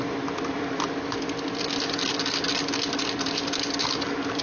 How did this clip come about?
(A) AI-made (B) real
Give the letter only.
B